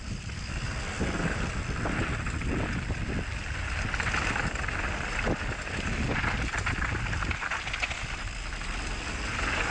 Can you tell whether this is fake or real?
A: real